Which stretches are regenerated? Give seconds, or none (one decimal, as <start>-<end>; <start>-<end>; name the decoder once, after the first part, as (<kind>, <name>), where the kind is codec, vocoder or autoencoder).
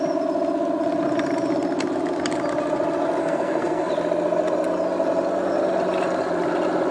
3.2-3.9 (codec, SNAC)